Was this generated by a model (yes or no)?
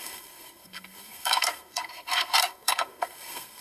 yes